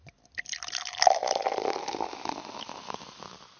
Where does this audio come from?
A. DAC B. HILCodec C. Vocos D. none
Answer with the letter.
D